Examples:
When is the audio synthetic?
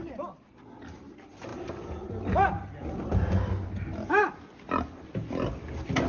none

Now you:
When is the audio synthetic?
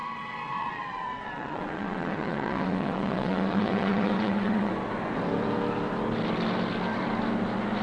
0.0-4.7 (vocoder, WaveNeXt)